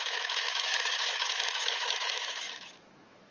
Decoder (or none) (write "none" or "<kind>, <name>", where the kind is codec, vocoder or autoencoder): autoencoder, DAC-VAE